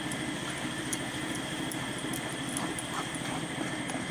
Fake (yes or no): no